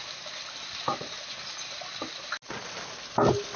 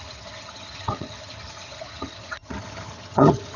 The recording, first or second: first